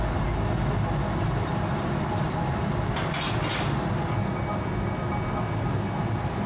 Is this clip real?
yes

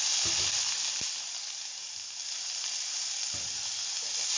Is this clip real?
yes